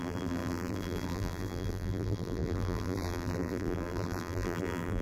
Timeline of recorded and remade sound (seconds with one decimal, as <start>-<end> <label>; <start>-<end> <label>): 0.0-5.0 remade